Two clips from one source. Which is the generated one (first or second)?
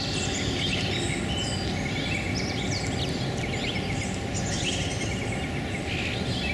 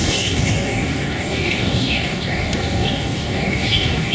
second